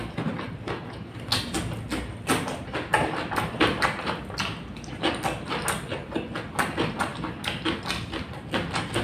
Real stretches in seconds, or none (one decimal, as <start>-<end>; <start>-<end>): 0.0-3.7; 4.2-9.0